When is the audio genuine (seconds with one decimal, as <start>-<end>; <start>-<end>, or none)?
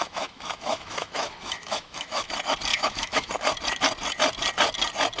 2.3-2.7; 3.3-5.2